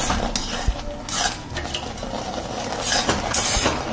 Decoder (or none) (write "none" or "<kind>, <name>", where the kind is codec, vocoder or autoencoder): none